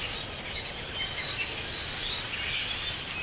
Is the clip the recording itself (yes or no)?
yes